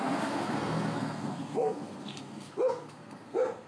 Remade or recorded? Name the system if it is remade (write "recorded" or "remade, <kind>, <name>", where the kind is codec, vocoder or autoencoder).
remade, codec, SNAC